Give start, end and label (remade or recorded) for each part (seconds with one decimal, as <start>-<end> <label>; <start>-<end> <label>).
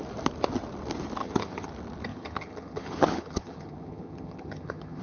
0.0-1.2 recorded; 1.2-1.7 remade; 1.7-2.1 recorded; 2.1-5.0 remade